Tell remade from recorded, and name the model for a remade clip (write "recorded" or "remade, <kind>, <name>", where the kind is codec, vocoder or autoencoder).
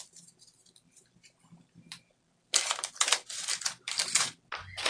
remade, vocoder, BigVGAN v2